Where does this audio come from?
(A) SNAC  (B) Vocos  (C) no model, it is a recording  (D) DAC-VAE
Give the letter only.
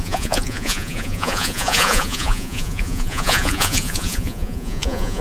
B